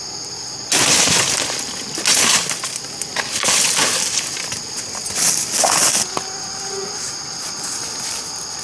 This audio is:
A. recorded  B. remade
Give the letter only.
A